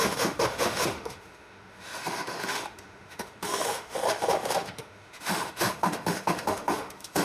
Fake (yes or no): yes